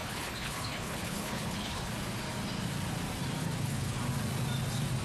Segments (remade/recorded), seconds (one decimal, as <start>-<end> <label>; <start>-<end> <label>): 0.0-1.9 remade; 1.9-3.4 recorded; 3.4-4.0 remade; 4.0-5.0 recorded